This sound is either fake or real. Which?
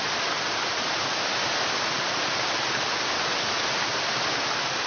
real